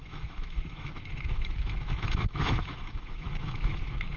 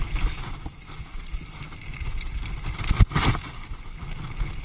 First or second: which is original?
second